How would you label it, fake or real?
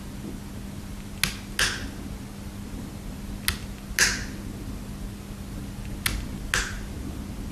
real